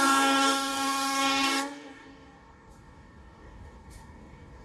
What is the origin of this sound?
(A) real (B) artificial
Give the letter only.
B